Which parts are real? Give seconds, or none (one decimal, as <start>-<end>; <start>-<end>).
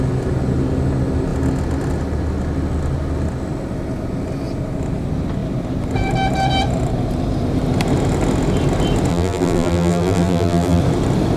0.0-9.1; 10.8-11.4